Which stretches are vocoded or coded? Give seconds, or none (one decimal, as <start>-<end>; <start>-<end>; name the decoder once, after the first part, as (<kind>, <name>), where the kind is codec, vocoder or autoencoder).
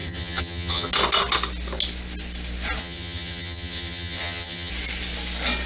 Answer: 0.0-0.9 (vocoder, HiFi-GAN); 2.8-4.7